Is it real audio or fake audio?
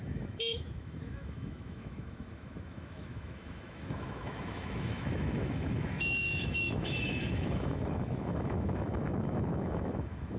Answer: fake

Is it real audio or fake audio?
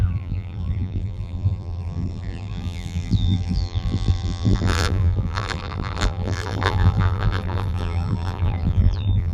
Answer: fake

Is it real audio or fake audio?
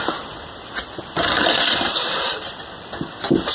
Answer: real